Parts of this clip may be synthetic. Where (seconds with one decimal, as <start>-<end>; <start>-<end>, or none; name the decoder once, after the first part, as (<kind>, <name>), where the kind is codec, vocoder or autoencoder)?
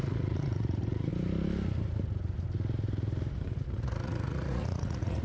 0.0-1.1 (vocoder, Vocos); 3.6-5.2